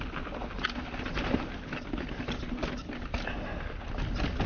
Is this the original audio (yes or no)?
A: yes